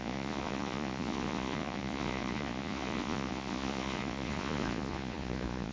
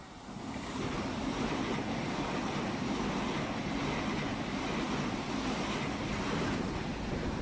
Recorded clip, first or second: second